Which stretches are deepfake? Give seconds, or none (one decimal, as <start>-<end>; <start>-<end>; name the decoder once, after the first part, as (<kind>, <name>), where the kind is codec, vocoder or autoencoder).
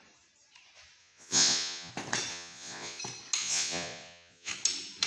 1.0-1.9 (vocoder, Vocos); 2.3-3.0; 3.4-4.5